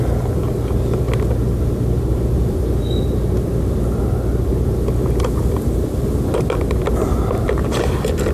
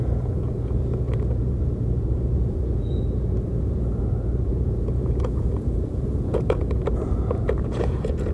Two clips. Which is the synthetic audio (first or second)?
second